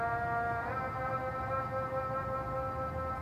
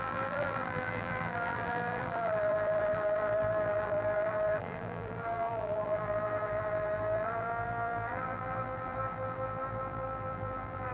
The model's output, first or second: second